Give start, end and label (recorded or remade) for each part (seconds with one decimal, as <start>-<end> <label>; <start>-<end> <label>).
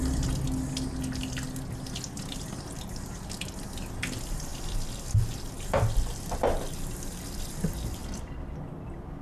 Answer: 0.0-9.2 recorded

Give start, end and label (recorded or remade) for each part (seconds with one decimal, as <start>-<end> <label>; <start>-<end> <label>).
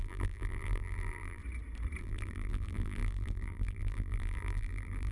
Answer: 0.0-1.4 remade; 1.4-2.0 recorded; 2.0-5.1 remade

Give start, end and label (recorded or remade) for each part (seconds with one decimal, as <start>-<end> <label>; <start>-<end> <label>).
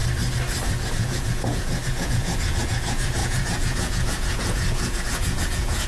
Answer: 0.0-0.9 recorded; 0.9-5.9 remade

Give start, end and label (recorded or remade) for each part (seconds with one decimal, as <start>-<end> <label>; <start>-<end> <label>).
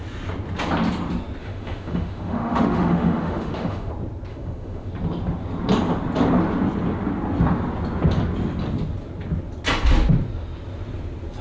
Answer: 0.0-1.4 recorded; 1.4-3.9 remade; 3.9-4.3 recorded; 4.3-4.9 remade; 4.9-11.4 recorded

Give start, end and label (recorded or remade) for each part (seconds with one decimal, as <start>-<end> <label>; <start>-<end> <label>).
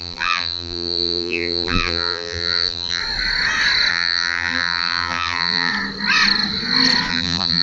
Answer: 0.0-3.0 remade; 3.0-3.9 recorded; 3.9-5.7 remade; 5.7-7.1 recorded; 7.1-7.6 remade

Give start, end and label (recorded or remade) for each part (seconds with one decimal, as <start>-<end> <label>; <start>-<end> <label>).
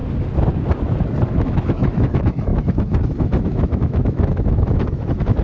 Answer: 0.0-1.3 recorded; 1.3-5.4 remade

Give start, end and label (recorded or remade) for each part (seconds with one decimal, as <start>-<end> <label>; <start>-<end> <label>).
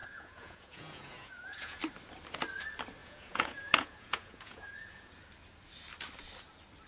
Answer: 0.0-1.8 remade; 1.8-3.0 recorded; 3.0-5.1 remade; 5.1-6.9 recorded